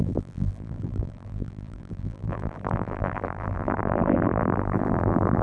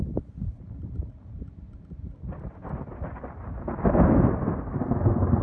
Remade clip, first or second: first